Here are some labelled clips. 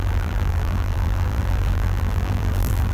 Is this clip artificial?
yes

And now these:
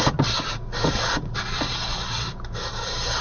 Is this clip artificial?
no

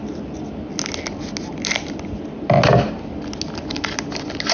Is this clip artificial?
no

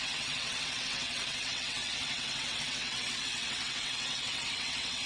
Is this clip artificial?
yes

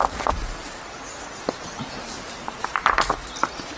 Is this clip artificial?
no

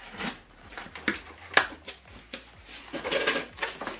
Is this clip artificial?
no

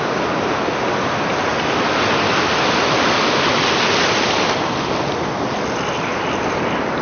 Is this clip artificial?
no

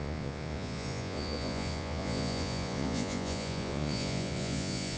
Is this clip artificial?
yes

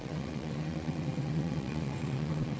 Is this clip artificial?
yes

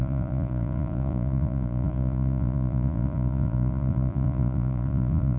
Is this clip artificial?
yes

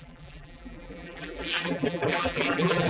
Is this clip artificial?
yes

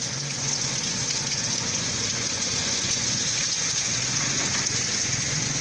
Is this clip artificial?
yes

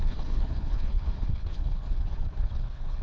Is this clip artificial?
yes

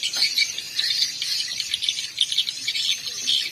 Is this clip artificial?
no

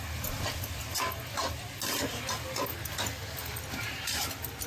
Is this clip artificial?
no